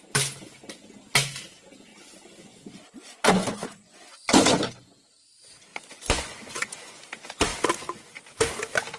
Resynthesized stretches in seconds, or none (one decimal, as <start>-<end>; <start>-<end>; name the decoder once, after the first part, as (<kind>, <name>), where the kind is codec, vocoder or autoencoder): 1.9-5.1 (vocoder, Vocos); 5.7-7.0